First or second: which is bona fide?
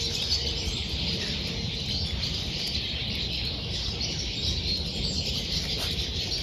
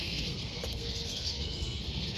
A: first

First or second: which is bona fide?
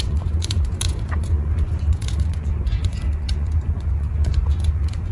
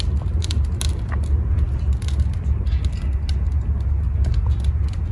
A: second